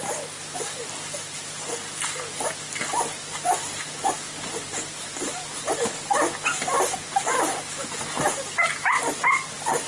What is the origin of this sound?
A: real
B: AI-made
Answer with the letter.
A